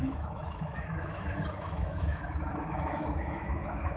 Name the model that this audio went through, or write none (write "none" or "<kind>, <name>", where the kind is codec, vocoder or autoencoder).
autoencoder, DAC-VAE